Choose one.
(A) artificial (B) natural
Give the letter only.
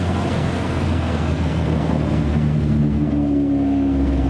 A